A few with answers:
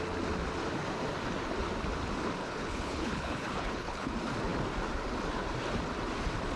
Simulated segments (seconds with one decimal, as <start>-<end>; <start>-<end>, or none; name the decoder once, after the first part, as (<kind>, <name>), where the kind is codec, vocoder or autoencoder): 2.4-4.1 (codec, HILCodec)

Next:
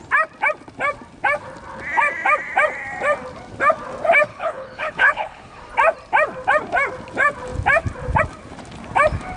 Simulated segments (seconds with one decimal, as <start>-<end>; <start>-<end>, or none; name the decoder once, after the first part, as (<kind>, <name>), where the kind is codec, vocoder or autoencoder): 4.3-5.6 (codec, HILCodec)

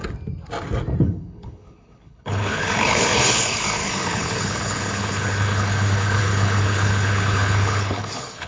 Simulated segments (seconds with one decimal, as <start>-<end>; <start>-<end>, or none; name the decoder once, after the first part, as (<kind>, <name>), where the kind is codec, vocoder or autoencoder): 1.0-8.5 (codec, HILCodec)